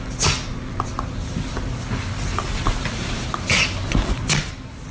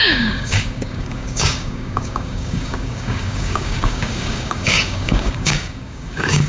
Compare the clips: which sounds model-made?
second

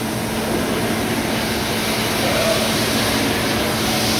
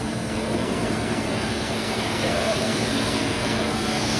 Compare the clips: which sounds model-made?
second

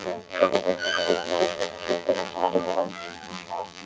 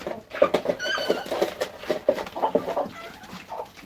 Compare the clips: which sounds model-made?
first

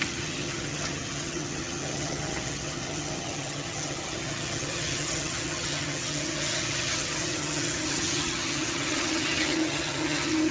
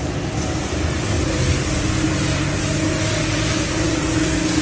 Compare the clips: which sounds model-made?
first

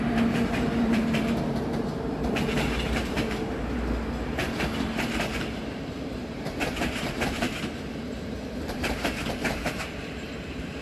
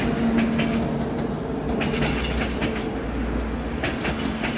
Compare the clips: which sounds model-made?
first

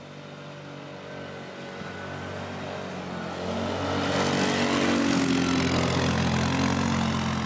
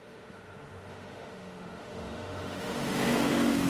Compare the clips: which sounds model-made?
second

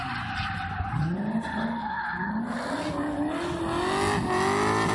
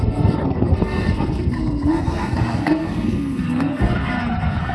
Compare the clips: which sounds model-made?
second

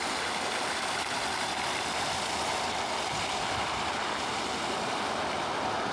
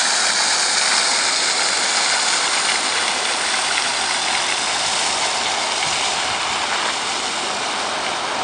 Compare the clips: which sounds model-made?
first